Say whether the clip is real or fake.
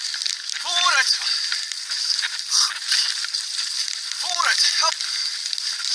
real